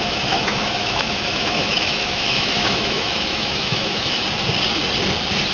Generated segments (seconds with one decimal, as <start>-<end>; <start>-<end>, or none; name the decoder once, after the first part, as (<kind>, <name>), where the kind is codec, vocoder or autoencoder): 0.0-4.2 (autoencoder, DAC-VAE)